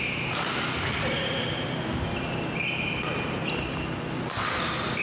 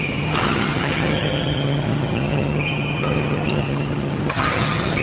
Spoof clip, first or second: second